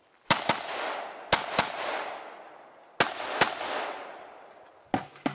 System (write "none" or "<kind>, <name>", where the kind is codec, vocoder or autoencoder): none